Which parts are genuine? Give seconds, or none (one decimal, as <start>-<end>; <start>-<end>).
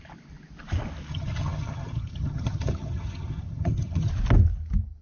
0.0-1.1; 4.1-5.0